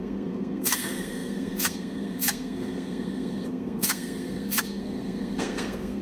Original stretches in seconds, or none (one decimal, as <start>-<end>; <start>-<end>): none